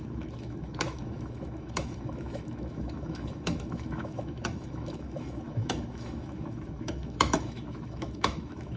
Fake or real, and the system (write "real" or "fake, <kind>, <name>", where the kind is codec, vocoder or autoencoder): fake, autoencoder, DAC-VAE